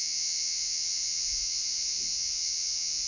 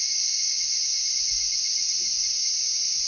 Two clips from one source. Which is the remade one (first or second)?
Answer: first